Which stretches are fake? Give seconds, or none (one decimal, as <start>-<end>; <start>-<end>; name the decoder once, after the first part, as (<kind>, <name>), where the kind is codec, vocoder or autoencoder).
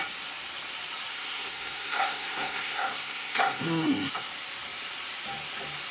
1.1-4.1 (codec, SNAC)